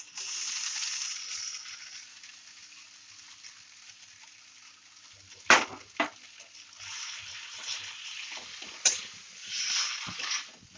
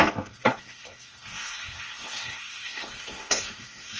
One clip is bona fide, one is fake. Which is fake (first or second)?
second